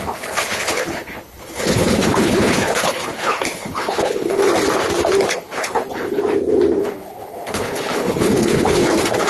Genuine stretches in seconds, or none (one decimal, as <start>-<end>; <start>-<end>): 4.4-5.3; 6.2-6.8